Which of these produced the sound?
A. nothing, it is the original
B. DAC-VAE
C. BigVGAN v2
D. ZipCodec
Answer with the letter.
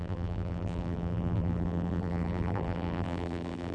C